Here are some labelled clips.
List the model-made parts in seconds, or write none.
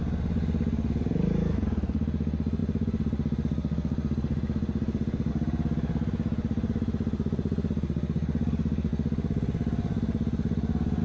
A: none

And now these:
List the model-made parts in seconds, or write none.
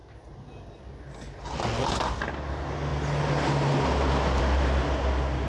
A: none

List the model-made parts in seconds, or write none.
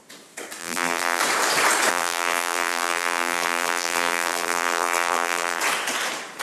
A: 0.6-1.2 (vocoder, BigVGAN v2); 1.9-5.6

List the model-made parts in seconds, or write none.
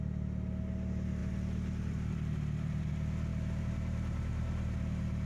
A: 1.2-2.9 (vocoder, BigVGAN v2); 3.3-5.3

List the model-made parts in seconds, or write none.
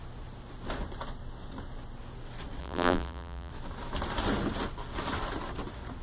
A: 2.6-3.5 (vocoder, BigVGAN v2)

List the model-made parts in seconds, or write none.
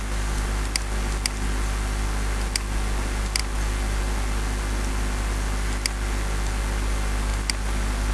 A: none